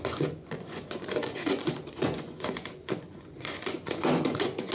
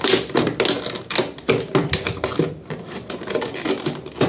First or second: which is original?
second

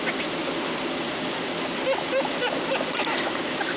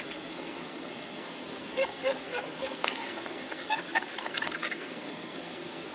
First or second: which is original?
first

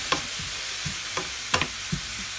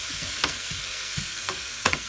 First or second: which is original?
first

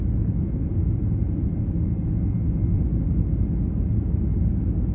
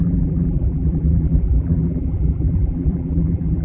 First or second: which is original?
first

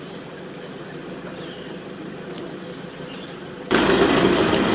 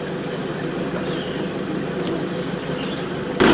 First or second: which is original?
second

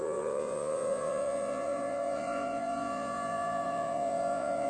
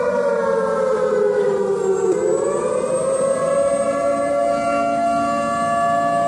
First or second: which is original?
second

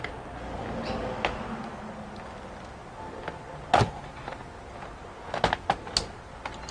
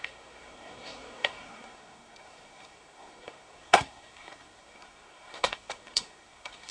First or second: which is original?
first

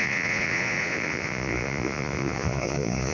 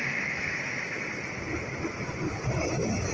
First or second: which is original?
second